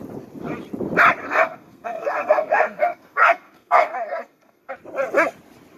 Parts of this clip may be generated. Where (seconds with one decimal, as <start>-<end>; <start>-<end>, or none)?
1.2-4.7